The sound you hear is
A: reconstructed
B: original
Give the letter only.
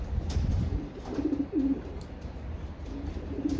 A